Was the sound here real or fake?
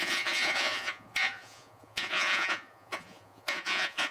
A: fake